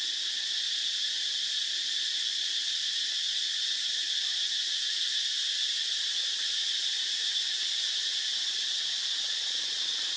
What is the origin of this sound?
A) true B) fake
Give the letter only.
A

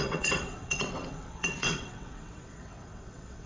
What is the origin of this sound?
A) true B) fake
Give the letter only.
B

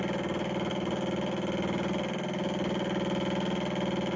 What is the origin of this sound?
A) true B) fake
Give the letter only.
A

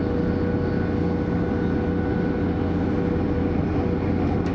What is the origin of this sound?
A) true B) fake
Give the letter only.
A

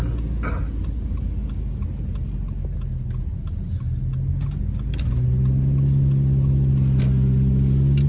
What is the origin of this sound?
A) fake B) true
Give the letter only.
B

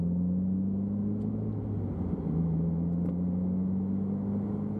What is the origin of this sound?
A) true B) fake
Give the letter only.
A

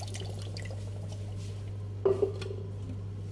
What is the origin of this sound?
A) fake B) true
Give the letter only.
B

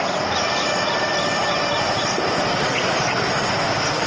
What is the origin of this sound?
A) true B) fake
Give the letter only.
A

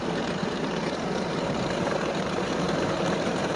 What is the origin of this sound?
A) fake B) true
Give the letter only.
A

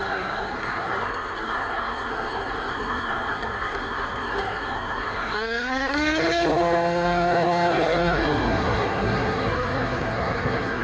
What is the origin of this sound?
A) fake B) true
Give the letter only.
A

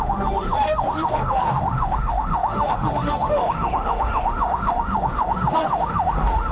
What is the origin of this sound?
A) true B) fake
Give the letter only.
B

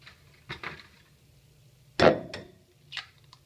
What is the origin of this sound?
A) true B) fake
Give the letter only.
A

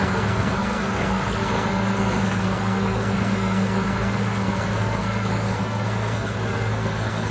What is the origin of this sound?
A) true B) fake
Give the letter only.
B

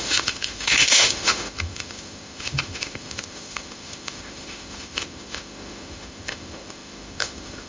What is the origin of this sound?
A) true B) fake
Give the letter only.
B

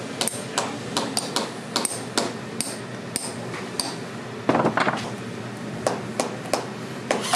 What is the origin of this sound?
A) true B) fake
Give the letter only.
A